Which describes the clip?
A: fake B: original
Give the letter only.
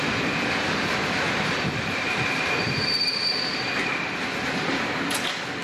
A